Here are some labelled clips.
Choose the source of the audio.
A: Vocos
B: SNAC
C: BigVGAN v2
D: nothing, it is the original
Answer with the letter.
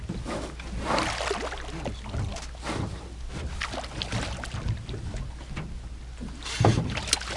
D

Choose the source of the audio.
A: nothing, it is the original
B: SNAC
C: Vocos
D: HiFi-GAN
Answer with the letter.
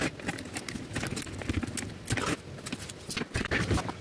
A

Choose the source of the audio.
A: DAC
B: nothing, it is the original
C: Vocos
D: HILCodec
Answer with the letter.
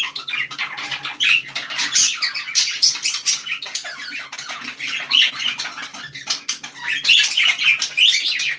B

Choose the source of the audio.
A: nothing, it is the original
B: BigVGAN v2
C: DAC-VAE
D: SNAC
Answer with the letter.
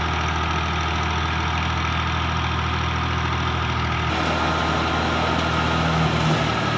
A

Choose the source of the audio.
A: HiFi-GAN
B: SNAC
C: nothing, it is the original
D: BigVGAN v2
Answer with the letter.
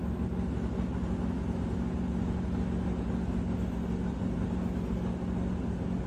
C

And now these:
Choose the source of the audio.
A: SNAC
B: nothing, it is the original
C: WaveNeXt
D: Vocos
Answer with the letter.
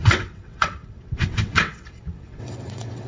C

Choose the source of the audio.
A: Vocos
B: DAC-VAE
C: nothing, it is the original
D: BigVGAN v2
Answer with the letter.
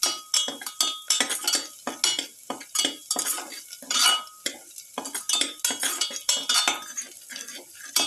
C